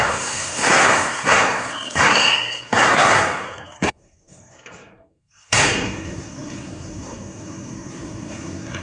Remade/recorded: remade